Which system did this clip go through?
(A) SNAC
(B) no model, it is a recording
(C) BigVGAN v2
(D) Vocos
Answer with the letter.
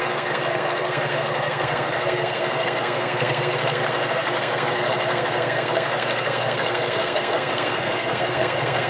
A